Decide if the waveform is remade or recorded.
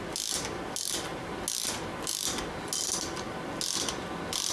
recorded